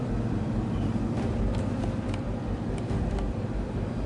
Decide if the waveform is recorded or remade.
remade